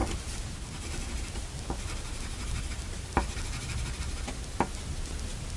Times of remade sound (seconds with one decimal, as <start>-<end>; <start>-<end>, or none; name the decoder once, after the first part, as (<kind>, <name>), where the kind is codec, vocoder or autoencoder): 0.0-3.4 (vocoder, BigVGAN v2)